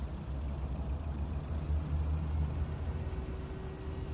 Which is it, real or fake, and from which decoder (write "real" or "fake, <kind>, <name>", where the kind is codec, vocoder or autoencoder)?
real